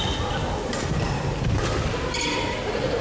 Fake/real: real